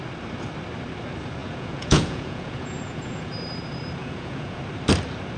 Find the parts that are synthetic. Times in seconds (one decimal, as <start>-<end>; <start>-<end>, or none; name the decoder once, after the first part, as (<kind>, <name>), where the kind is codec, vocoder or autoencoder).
1.4-3.3 (vocoder, Vocos); 4.0-4.6